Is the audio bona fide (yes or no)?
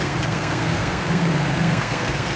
no